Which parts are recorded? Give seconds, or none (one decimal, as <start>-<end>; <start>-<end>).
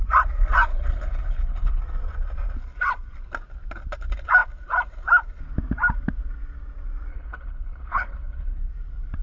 0.0-0.7; 1.8-7.1; 8.7-9.2